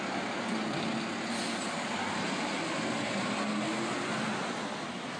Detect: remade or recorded recorded